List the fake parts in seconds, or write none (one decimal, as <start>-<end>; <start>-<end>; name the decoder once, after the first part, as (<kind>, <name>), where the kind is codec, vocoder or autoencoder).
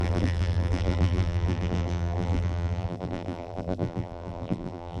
0.0-5.0 (vocoder, BigVGAN v2)